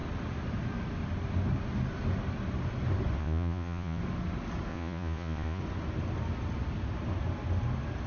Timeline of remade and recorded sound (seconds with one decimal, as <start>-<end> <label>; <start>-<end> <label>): 0.0-3.2 recorded; 3.2-4.0 remade; 4.0-4.7 recorded; 4.7-5.6 remade; 5.6-8.1 recorded